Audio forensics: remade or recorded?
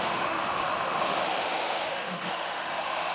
remade